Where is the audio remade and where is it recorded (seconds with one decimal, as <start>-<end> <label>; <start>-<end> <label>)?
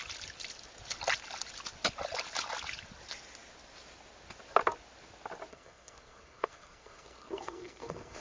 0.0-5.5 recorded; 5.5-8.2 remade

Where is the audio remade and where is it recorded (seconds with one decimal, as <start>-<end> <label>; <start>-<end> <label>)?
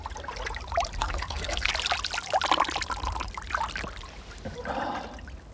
0.0-1.0 recorded; 1.0-1.7 remade; 1.7-5.5 recorded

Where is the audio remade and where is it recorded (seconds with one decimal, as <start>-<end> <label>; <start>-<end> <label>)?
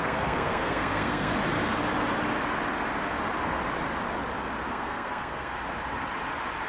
0.0-1.3 remade; 1.3-4.7 recorded; 4.7-5.5 remade; 5.5-6.7 recorded